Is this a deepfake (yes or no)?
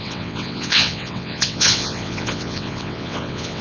yes